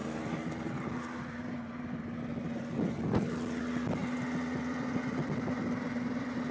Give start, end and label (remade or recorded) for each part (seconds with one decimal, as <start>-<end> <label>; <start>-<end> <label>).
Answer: 0.0-6.5 recorded